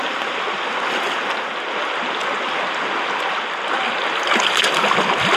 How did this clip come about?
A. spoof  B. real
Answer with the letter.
B